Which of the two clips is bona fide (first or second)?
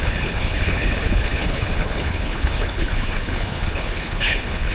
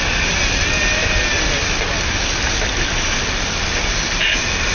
second